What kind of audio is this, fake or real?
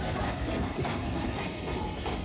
fake